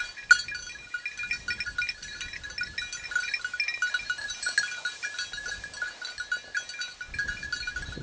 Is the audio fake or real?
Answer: real